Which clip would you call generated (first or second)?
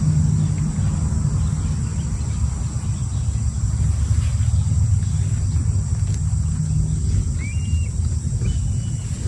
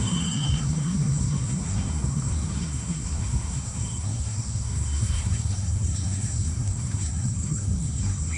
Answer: second